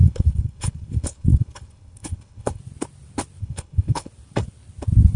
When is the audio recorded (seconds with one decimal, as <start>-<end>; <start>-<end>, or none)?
2.6-3.4; 4.1-5.2